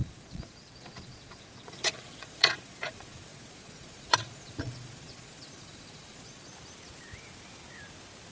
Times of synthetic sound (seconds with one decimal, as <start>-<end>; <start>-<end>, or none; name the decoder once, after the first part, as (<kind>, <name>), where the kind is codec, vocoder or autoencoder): 0.0-6.5 (vocoder, Vocos)